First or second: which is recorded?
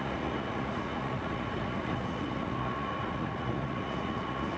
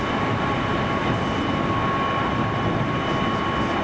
second